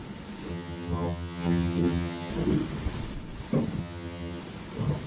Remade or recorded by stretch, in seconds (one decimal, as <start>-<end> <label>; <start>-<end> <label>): 0.0-0.5 recorded; 0.5-2.3 remade; 2.3-3.8 recorded; 3.8-4.4 remade; 4.4-5.1 recorded